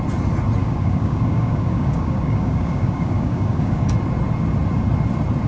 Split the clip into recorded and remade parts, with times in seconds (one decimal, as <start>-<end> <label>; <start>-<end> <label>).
0.0-0.6 recorded; 0.6-3.9 remade; 3.9-5.5 recorded